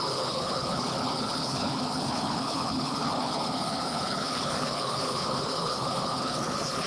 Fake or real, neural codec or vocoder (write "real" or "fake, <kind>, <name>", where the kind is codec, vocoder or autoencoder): fake, codec, HILCodec